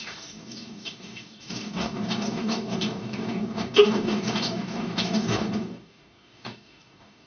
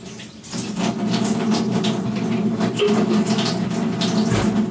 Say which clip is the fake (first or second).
first